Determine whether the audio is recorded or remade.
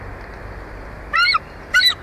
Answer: recorded